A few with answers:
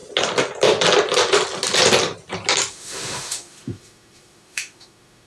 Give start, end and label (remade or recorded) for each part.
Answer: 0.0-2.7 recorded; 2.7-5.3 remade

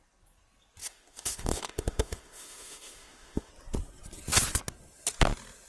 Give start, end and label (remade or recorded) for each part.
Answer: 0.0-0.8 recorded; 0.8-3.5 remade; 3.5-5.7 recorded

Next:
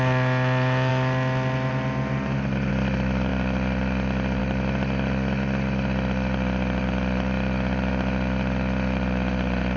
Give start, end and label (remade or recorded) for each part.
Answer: 0.0-9.8 recorded

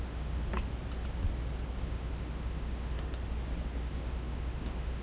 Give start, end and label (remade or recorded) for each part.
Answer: 0.0-0.5 remade; 0.5-1.8 recorded; 1.8-3.2 remade; 3.2-3.8 recorded; 3.8-5.0 remade

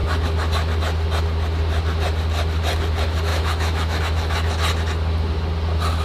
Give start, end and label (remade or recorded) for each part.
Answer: 0.0-3.3 recorded; 3.3-4.0 remade; 4.0-6.0 recorded

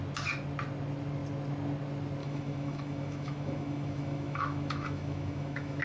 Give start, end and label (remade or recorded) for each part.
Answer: 0.0-2.2 recorded; 2.2-5.8 remade

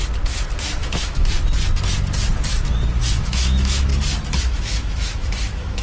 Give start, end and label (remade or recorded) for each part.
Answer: 0.0-0.6 recorded; 0.6-1.2 remade; 1.2-3.1 recorded; 3.1-3.9 remade; 3.9-4.4 recorded; 4.4-5.8 remade